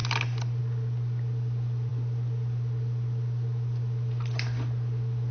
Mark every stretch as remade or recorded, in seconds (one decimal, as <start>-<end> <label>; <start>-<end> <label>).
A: 0.0-5.3 recorded